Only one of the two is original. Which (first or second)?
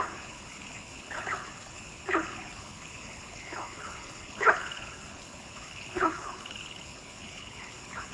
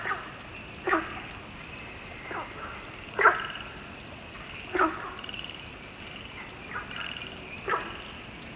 second